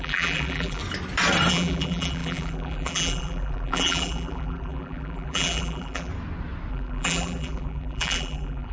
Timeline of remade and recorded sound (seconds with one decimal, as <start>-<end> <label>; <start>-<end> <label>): 0.0-0.8 remade; 0.8-1.5 recorded; 1.5-6.1 remade; 6.1-6.7 recorded; 6.7-8.7 remade